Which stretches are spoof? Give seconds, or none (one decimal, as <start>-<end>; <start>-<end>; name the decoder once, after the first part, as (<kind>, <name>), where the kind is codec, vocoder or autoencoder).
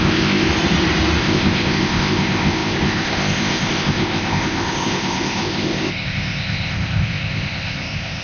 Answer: 0.0-0.5 (codec, ZipCodec); 1.2-8.2